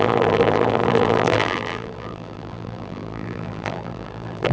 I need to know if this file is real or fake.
fake